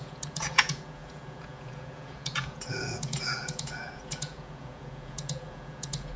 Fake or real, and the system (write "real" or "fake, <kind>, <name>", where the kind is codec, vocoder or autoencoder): fake, vocoder, Vocos